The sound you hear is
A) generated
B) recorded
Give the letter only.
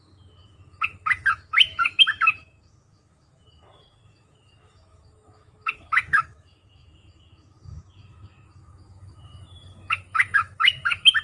A